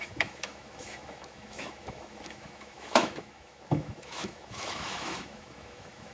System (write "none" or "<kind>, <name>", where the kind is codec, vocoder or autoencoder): autoencoder, DAC-VAE